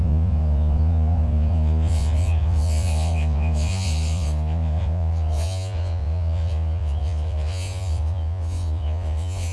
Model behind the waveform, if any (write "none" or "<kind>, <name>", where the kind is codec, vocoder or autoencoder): vocoder, Vocos